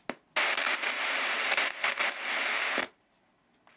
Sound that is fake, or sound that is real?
real